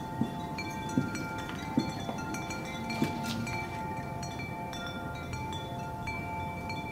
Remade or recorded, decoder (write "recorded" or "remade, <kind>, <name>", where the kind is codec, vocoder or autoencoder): remade, vocoder, BigVGAN v2